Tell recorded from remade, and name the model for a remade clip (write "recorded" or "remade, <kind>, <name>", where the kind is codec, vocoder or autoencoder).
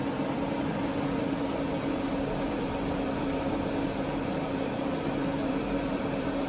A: remade, vocoder, BigVGAN v2